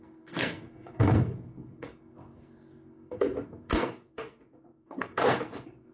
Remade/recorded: remade